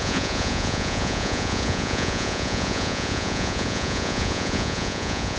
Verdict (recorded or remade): remade